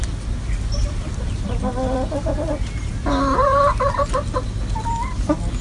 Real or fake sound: real